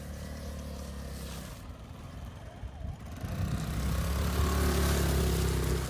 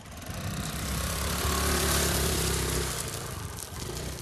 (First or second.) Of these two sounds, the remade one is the second